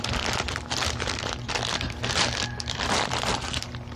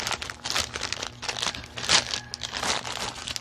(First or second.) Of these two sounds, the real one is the second